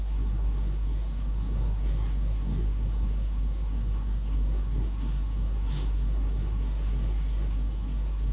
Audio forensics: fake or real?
fake